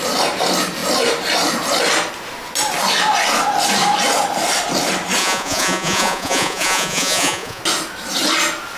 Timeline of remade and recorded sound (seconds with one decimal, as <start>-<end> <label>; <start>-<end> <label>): 0.0-5.2 recorded; 5.2-7.6 remade; 7.6-8.8 recorded